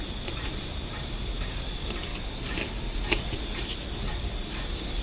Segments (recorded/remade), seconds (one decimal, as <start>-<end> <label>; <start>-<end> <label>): 0.0-5.0 recorded